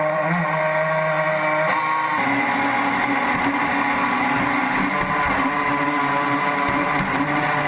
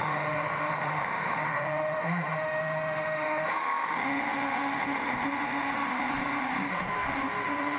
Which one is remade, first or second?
second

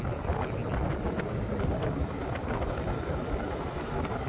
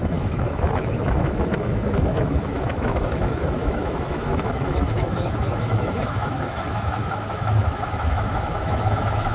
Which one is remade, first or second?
second